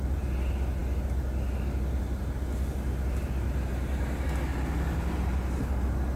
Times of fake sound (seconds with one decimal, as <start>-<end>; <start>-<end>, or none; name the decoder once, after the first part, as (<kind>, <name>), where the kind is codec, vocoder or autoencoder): none